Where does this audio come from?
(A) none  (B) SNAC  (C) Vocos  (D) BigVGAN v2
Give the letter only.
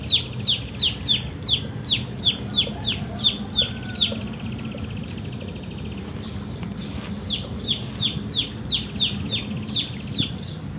A